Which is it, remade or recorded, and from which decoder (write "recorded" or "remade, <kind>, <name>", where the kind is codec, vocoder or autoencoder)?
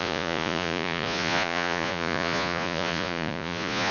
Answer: remade, vocoder, Vocos